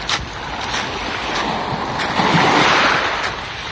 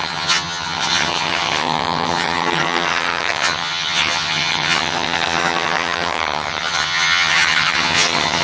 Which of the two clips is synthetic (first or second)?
second